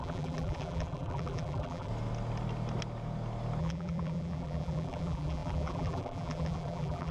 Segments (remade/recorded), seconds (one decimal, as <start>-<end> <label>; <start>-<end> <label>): 0.0-1.9 remade; 1.9-3.6 recorded; 3.6-7.1 remade